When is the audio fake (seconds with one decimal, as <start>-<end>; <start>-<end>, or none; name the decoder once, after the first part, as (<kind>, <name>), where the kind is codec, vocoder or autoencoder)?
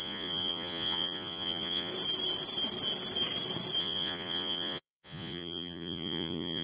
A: 0.0-1.9 (vocoder, Vocos); 3.8-6.6